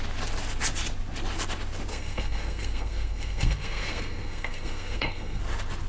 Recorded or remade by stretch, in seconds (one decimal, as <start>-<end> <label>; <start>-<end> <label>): 0.0-1.9 recorded; 1.9-5.4 remade; 5.4-5.9 recorded